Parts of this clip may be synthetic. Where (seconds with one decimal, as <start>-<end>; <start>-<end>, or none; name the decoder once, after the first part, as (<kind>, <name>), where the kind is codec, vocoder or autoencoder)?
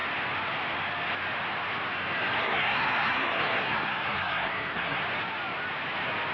2.4-5.0 (codec, SNAC)